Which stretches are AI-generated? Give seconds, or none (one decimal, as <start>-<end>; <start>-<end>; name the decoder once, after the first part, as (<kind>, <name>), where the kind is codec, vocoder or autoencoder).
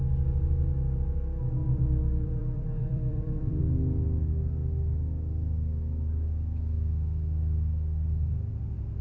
1.6-3.6 (vocoder, BigVGAN v2)